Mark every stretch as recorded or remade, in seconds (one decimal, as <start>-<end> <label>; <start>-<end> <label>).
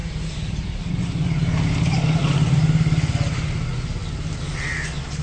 0.0-5.2 recorded